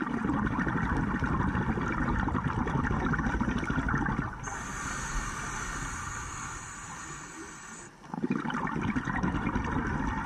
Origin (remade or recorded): recorded